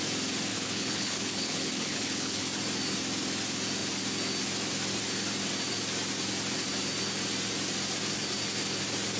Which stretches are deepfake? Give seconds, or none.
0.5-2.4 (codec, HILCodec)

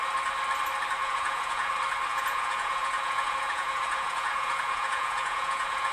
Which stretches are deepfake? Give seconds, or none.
1.0-1.7 (vocoder, Vocos); 2.1-5.9

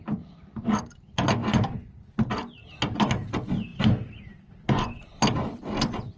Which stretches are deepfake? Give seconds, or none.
3.7-5.6 (vocoder, BigVGAN v2)

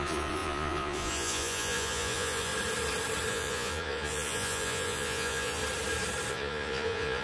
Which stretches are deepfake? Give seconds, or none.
0.0-2.5 (vocoder, Vocos); 3.3-5.6; 6.3-7.2

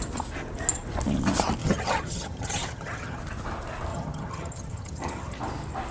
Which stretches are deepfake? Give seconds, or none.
1.6-3.2 (vocoder, HiFi-GAN); 3.9-5.4